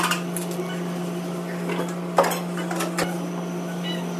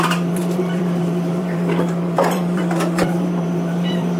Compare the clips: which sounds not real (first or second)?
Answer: second